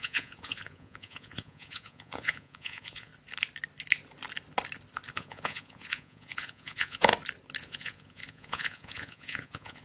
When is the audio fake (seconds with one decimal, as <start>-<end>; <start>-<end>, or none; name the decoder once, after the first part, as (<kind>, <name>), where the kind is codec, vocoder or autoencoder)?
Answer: 0.0-3.1 (vocoder, Vocos); 5.1-7.1; 7.6-9.8